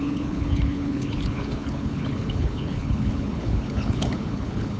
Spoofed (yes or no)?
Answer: yes